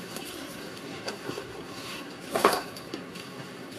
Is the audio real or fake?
fake